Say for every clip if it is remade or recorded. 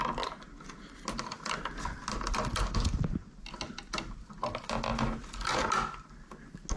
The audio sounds recorded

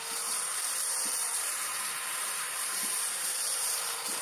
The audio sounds remade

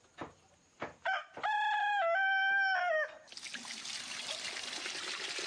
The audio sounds recorded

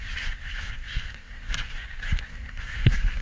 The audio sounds remade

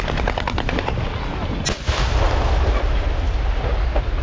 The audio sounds recorded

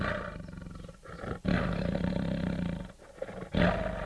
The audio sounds recorded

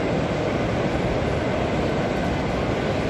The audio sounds recorded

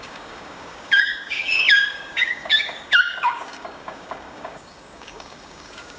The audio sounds remade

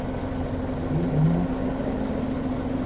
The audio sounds recorded